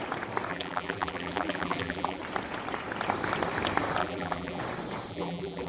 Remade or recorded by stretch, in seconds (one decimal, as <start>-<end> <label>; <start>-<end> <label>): 0.0-0.5 recorded; 0.5-2.2 remade; 2.2-4.0 recorded; 4.0-4.6 remade; 4.6-5.1 recorded; 5.1-5.7 remade